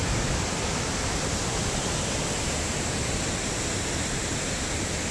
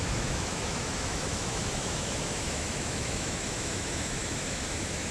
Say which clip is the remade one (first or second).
second